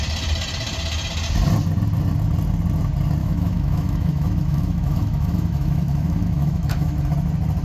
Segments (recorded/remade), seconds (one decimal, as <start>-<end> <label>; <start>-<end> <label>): 0.0-3.2 recorded; 3.2-7.1 remade; 7.1-7.6 recorded